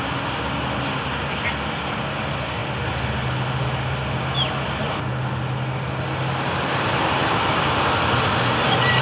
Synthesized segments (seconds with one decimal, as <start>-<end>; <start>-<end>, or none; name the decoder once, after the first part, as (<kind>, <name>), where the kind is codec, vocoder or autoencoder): none